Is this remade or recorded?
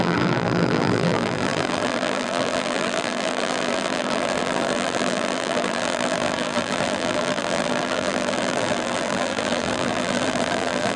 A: remade